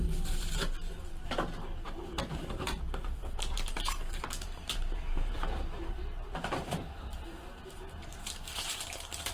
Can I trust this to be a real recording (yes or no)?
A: no